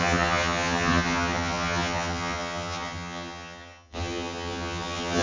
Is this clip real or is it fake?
fake